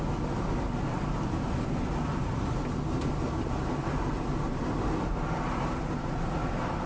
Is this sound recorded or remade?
recorded